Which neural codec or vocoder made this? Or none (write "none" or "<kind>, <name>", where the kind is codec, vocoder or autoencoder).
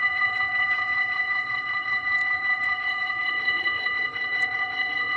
vocoder, WaveNeXt